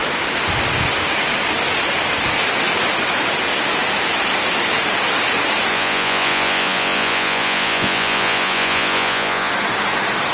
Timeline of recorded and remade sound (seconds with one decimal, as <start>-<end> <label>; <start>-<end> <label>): 0.0-5.7 recorded; 5.7-9.5 remade; 9.5-10.3 recorded